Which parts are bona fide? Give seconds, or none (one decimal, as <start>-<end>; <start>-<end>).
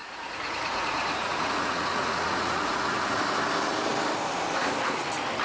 3.2-5.4